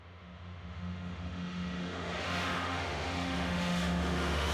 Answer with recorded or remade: remade